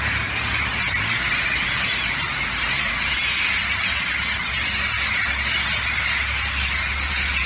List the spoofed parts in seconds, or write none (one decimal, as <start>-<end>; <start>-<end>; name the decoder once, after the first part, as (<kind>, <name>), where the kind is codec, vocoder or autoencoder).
0.0-3.2 (vocoder, BigVGAN v2); 6.8-7.5